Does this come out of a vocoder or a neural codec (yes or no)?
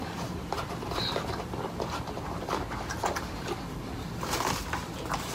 yes